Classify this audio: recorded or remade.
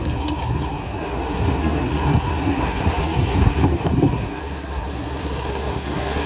remade